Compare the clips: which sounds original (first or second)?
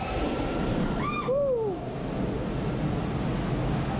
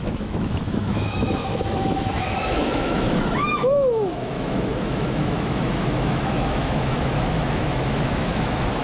first